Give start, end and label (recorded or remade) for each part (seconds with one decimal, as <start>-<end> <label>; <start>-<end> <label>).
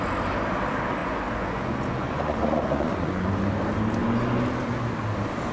0.0-1.0 recorded; 1.0-3.3 remade; 3.3-5.5 recorded